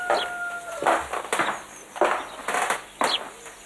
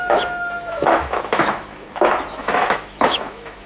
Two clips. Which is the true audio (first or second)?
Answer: first